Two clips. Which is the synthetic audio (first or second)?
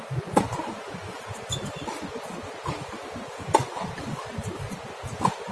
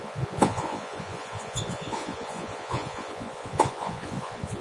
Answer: second